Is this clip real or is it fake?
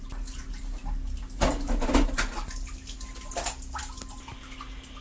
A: real